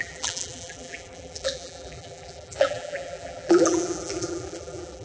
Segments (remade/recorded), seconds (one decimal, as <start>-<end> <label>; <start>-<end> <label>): 0.0-5.0 remade